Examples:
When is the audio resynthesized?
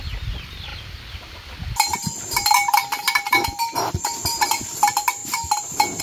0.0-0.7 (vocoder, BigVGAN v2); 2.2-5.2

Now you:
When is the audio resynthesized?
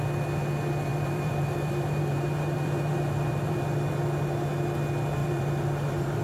0.9-3.6 (vocoder, BigVGAN v2); 5.2-6.2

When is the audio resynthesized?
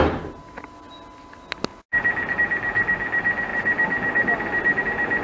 none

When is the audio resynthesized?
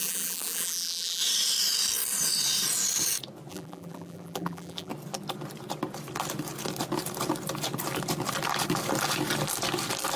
0.0-1.2 (vocoder, BigVGAN v2); 3.5-4.9